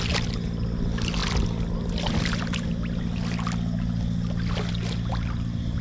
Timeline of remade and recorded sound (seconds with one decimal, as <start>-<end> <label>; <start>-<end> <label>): 0.0-5.8 recorded